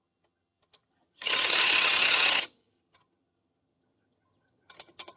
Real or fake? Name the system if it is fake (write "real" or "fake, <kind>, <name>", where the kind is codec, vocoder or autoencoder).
fake, vocoder, HiFi-GAN